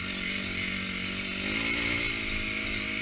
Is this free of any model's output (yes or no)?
yes